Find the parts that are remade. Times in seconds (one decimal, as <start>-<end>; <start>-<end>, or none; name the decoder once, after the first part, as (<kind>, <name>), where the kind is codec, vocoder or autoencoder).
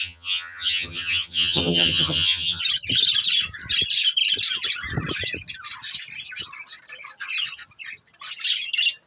0.0-2.6 (vocoder, HiFi-GAN)